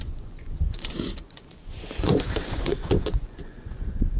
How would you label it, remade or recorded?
remade